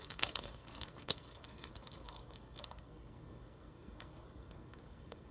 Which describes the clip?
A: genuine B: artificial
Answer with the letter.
B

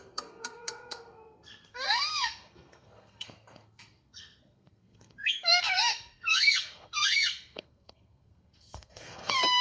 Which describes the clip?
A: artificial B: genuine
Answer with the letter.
A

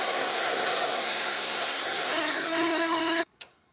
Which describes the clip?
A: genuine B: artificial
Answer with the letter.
B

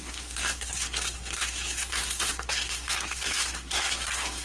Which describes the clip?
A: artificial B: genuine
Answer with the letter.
A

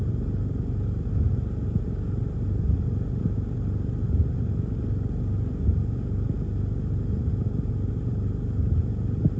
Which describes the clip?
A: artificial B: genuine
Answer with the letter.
B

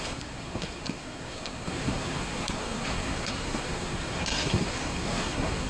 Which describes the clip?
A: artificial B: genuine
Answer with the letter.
A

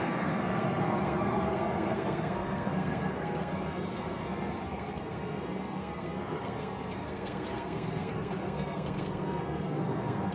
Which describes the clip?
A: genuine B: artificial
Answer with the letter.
B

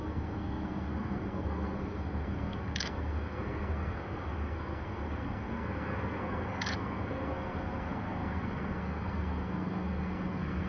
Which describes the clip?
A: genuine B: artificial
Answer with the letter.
B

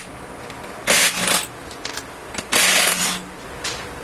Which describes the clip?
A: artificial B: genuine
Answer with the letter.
B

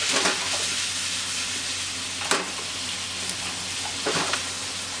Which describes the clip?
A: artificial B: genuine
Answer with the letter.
B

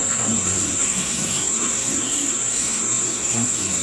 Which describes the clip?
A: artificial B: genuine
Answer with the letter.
A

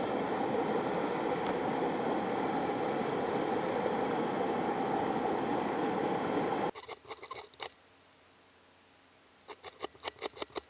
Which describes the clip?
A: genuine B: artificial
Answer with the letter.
A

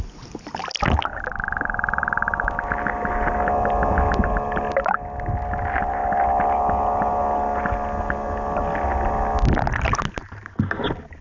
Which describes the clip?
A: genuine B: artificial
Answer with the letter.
A